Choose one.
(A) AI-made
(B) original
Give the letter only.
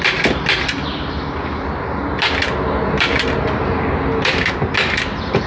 B